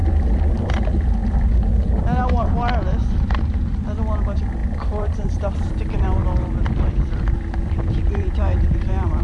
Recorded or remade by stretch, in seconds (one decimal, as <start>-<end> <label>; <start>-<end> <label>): 0.0-4.6 recorded; 4.6-5.3 remade; 5.3-6.2 recorded; 6.2-9.2 remade